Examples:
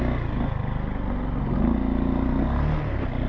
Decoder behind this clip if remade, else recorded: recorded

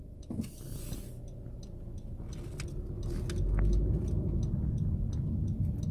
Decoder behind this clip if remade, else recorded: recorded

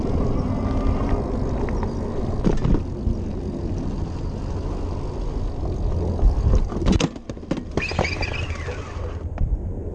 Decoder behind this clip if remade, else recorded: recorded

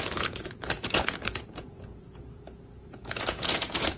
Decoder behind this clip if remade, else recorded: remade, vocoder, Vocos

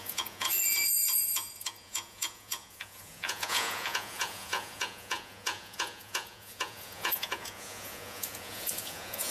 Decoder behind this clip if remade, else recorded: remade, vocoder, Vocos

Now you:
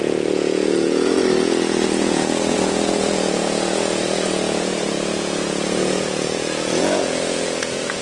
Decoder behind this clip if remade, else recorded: remade, vocoder, Vocos